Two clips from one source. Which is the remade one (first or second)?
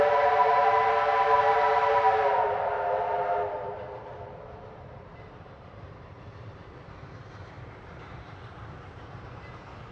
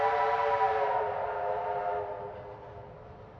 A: first